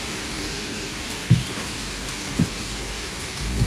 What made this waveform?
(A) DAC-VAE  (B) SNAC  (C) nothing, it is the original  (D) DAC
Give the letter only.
D